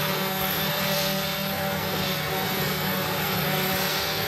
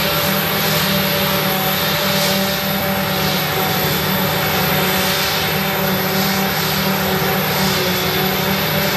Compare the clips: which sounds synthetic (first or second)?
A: first